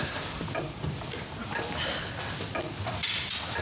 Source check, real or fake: real